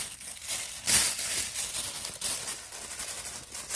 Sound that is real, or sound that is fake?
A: real